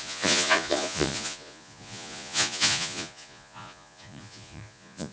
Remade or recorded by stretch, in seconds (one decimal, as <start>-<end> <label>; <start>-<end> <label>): 0.0-5.1 remade